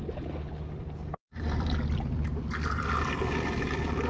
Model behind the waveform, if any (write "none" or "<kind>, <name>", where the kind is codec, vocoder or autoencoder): vocoder, BigVGAN v2